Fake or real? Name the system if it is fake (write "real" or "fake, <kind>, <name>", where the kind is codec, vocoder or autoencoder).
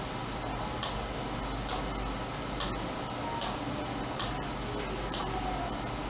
real